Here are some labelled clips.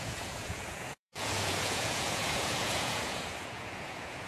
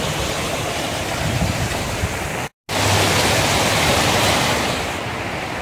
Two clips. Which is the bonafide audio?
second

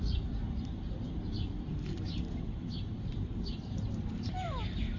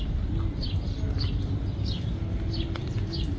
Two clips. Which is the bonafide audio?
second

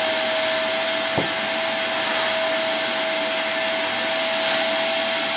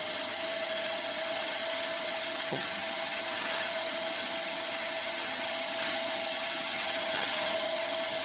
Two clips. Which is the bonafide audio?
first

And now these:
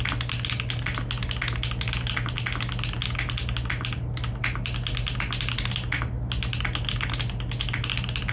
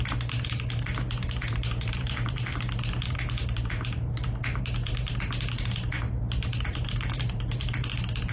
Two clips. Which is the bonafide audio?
first